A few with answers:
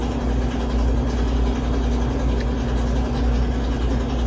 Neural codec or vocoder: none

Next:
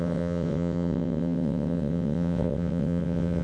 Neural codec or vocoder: vocoder, WaveNeXt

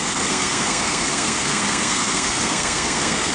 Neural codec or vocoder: codec, SNAC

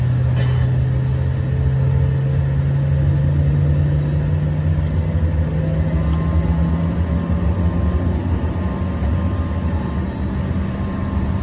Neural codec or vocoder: none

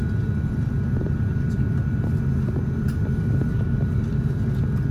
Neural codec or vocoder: none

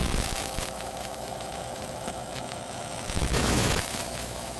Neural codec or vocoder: autoencoder, DAC-VAE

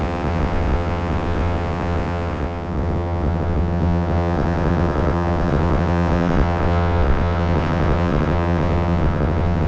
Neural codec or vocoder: vocoder, WaveNeXt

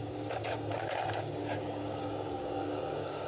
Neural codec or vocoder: codec, DAC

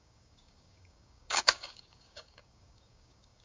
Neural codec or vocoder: codec, DAC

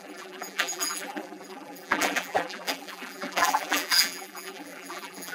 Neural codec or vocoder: vocoder, BigVGAN v2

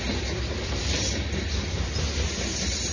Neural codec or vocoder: none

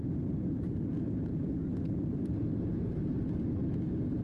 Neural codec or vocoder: none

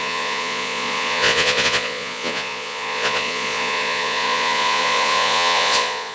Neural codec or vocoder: vocoder, Vocos